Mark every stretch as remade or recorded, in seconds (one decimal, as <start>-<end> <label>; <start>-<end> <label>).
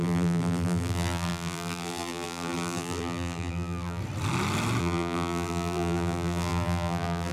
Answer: 0.0-4.0 remade; 4.0-4.8 recorded; 4.8-7.3 remade